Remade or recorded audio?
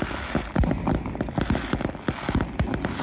recorded